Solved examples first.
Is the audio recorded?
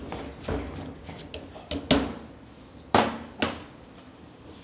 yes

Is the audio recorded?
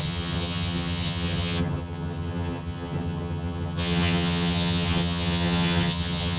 no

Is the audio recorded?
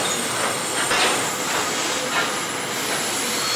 yes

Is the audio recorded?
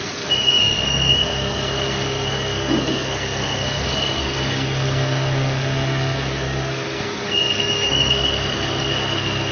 no